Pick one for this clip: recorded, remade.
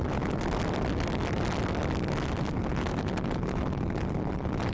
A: recorded